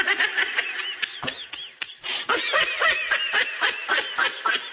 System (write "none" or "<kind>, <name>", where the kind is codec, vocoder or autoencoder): none